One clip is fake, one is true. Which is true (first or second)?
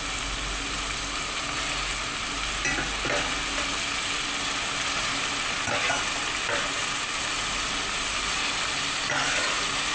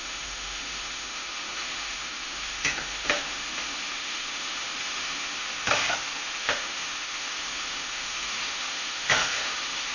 first